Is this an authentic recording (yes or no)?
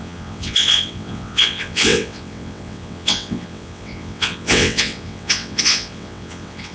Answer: no